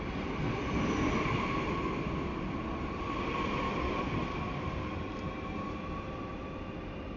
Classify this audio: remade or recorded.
recorded